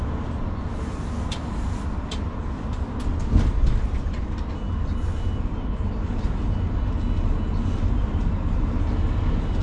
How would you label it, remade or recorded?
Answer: recorded